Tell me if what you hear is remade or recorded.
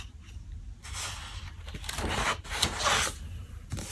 recorded